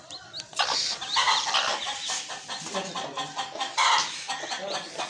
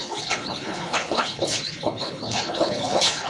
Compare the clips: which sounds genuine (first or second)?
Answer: first